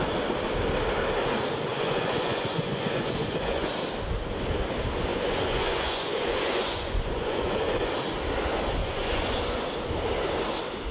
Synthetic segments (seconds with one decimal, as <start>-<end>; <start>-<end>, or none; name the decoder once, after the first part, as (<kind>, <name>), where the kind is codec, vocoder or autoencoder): 1.7-3.7 (vocoder, Vocos); 5.1-7.9; 8.8-9.6